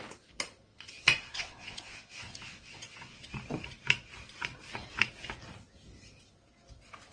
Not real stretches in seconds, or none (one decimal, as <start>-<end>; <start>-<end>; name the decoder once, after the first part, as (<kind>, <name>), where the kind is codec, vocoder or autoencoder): 0.7-3.3 (vocoder, Vocos)